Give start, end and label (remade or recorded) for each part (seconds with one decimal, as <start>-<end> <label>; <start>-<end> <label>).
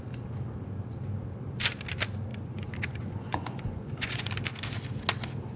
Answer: 0.0-2.3 recorded; 2.3-4.3 remade; 4.3-5.6 recorded